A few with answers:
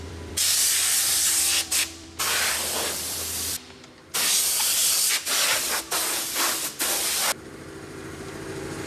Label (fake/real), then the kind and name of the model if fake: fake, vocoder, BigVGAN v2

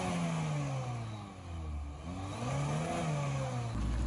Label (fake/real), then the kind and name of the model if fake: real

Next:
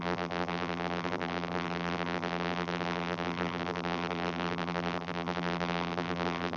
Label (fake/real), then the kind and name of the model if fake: fake, vocoder, BigVGAN v2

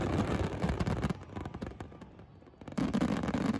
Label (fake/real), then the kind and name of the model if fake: real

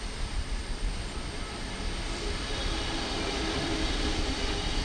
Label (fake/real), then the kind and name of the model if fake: fake, vocoder, BigVGAN v2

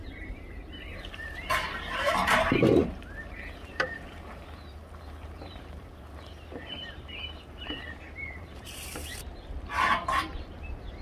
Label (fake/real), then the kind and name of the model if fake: fake, vocoder, BigVGAN v2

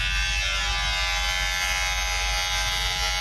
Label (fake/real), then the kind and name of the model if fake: real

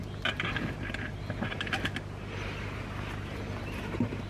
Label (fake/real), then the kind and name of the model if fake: real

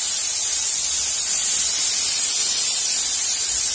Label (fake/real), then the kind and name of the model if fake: fake, vocoder, BigVGAN v2